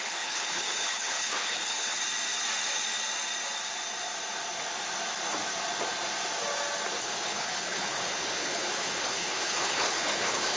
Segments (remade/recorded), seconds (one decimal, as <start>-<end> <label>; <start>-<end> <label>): 0.0-2.0 remade; 2.0-7.0 recorded; 7.0-10.6 remade